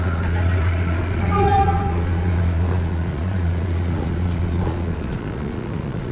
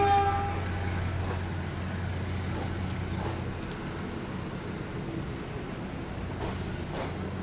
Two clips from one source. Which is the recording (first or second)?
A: second